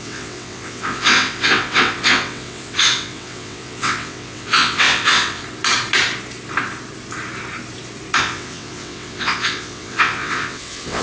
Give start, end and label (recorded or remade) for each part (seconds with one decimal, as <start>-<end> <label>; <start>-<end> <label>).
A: 0.0-5.4 remade; 5.4-8.2 recorded; 8.2-11.0 remade